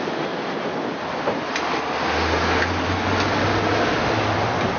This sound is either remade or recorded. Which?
recorded